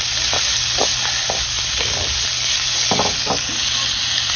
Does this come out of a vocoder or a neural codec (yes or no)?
no